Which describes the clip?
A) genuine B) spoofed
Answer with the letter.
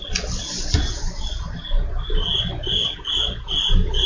A